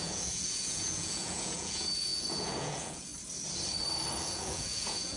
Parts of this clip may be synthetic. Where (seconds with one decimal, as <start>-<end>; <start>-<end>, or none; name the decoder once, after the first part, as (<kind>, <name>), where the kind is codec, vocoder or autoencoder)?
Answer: 0.0-3.1 (vocoder, Vocos); 4.2-5.2